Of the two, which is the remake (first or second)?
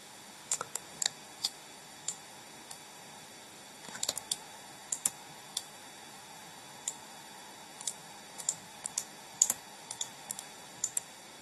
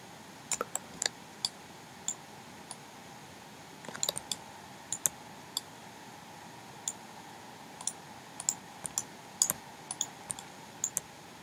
first